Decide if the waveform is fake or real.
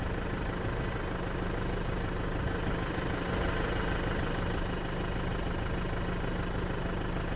real